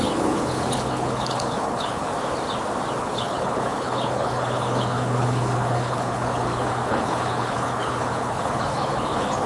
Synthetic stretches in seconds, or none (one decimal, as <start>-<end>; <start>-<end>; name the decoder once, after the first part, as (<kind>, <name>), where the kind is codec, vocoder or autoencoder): 0.0-2.1 (codec, HILCodec); 3.0-9.5